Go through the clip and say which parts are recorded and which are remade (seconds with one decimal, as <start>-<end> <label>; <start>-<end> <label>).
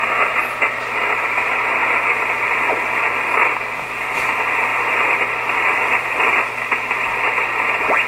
0.0-4.7 recorded; 4.7-6.3 remade; 6.3-8.1 recorded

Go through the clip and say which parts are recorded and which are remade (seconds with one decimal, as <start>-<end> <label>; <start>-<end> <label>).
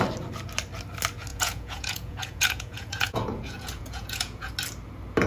0.0-1.3 recorded; 1.3-4.5 remade; 4.5-5.3 recorded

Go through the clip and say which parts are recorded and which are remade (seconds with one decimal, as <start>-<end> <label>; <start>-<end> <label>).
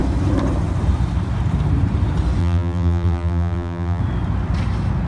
0.0-2.4 recorded; 2.4-4.0 remade; 4.0-5.1 recorded